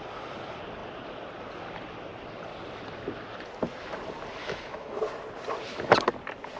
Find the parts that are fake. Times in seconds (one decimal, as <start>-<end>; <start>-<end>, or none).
4.4-5.0